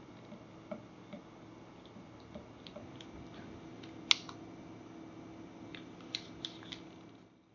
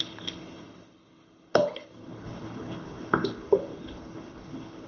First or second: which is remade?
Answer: second